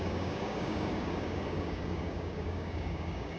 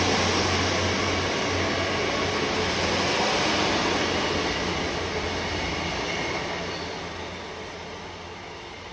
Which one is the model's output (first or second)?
first